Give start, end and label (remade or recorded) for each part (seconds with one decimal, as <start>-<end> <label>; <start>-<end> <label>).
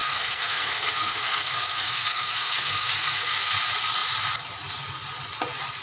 0.0-3.5 remade; 3.5-5.8 recorded